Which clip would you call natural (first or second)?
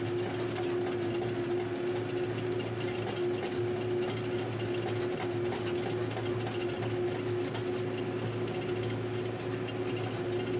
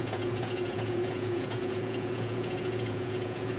first